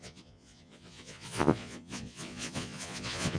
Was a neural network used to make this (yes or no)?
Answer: yes